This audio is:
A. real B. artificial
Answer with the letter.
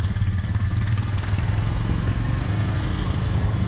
B